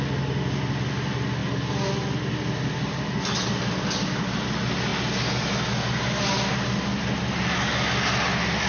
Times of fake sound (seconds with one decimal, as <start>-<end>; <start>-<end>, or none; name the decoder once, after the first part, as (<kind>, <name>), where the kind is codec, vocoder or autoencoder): none

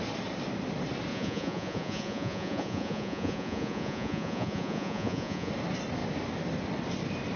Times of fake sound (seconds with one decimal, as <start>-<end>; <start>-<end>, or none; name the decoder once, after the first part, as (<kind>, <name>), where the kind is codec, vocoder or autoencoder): 1.1-5.5 (vocoder, Vocos)

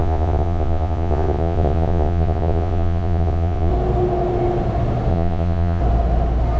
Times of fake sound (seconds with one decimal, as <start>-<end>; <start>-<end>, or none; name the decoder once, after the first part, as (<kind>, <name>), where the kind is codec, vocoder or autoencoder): 0.0-3.7 (vocoder, Vocos); 5.1-5.8

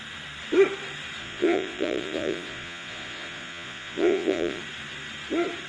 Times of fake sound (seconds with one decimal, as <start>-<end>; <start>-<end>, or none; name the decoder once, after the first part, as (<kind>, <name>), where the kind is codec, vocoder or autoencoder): 1.2-4.6 (vocoder, Vocos)